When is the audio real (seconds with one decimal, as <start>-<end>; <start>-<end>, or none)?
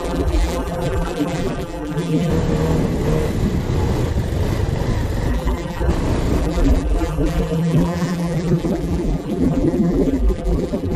2.3-5.3; 5.9-6.4